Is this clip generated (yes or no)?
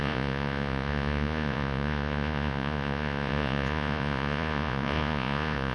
yes